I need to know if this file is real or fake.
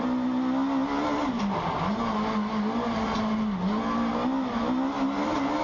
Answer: real